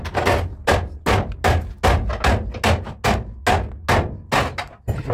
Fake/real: real